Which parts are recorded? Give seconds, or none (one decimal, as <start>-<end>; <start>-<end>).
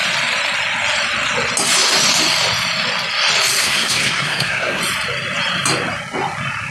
0.0-3.6; 4.8-6.7